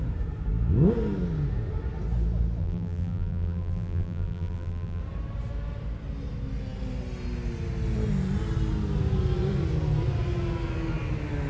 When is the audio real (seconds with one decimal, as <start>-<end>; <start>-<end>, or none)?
0.0-2.6; 5.0-11.5